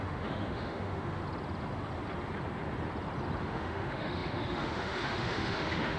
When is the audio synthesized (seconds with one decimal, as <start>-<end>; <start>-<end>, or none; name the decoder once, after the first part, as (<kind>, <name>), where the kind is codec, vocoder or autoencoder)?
0.0-1.2 (autoencoder, DAC-VAE); 3.4-6.0